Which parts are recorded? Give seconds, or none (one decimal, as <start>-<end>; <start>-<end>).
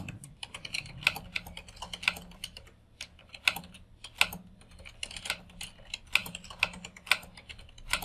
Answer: 0.0-8.0